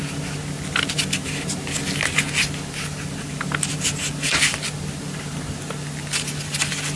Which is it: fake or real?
real